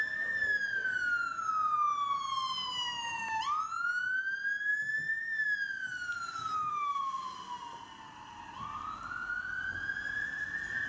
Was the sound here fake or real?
real